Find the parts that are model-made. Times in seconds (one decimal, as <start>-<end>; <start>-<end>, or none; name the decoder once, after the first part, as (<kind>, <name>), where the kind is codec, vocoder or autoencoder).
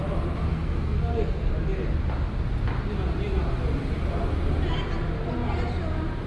0.5-1.5 (codec, SNAC)